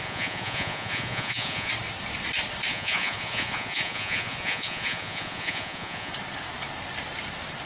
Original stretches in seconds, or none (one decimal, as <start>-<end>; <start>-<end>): 1.7-2.7; 6.1-7.7